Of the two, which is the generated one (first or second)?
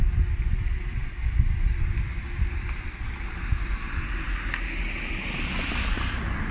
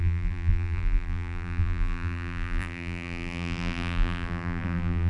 second